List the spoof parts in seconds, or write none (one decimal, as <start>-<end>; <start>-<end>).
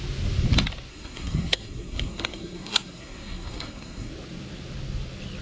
0.9-4.1